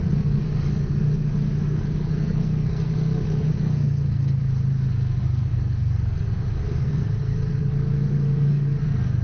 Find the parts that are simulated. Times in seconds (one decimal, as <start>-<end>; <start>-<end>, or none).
0.0-4.4; 4.9-9.2